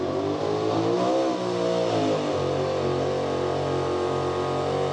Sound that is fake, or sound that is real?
real